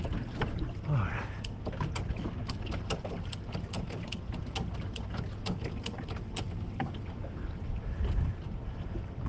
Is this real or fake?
real